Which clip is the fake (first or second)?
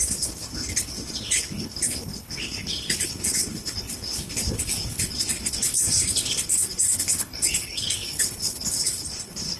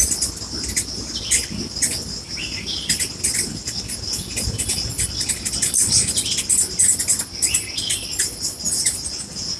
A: first